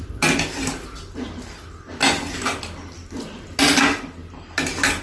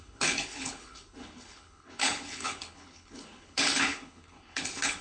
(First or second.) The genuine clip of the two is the first